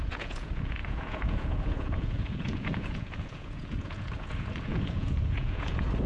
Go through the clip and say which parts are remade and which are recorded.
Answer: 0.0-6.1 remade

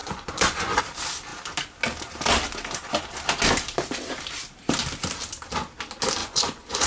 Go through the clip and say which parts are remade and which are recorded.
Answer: 0.0-0.8 remade; 0.8-6.2 recorded; 6.2-6.9 remade

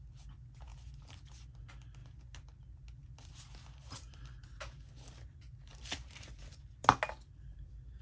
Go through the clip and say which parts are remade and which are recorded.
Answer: 0.0-8.0 recorded

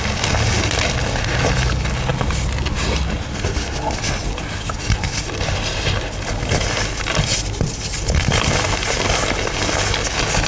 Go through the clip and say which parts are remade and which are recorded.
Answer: 0.0-10.5 recorded

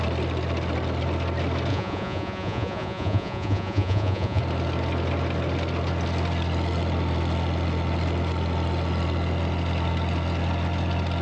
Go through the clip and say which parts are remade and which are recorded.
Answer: 0.0-1.7 recorded; 1.7-4.4 remade; 4.4-11.2 recorded